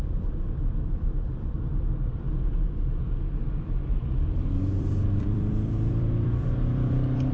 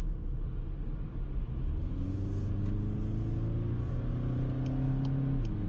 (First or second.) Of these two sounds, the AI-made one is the first